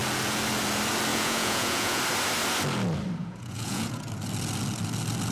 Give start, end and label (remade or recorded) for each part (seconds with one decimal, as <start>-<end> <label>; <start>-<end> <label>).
0.0-1.1 recorded; 1.1-2.0 remade; 2.0-3.2 recorded; 3.2-4.1 remade; 4.1-5.3 recorded

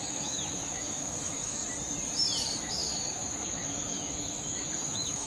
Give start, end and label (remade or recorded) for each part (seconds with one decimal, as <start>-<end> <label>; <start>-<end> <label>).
0.0-1.6 remade; 1.6-2.6 recorded; 2.6-5.3 remade

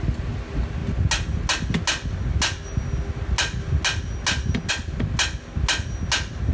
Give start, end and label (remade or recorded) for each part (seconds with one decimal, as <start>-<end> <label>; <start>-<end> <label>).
0.0-6.5 recorded

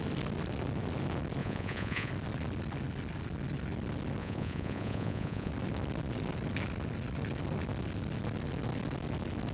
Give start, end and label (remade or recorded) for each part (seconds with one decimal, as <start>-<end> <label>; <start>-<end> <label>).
0.0-1.4 recorded; 1.4-2.1 remade; 2.1-4.2 recorded; 4.2-5.5 remade; 5.5-9.5 recorded

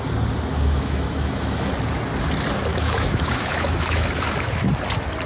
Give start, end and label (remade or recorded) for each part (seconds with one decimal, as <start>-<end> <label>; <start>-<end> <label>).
0.0-0.5 recorded; 0.5-1.7 remade; 1.7-2.7 recorded; 2.7-4.7 remade; 4.7-5.3 recorded

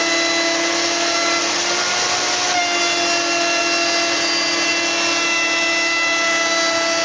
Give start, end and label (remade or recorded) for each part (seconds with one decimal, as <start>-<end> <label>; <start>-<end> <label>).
0.0-7.0 recorded